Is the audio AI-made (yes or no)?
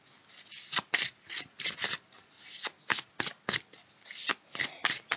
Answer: no